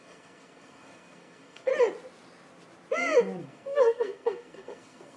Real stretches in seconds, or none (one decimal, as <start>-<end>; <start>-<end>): 1.7-3.4